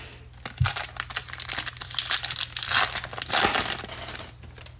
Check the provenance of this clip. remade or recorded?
recorded